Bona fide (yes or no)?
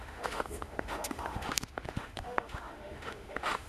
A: no